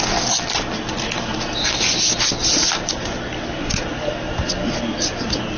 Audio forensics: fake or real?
real